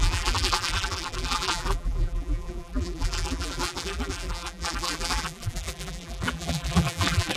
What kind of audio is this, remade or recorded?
remade